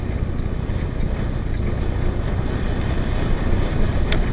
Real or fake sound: real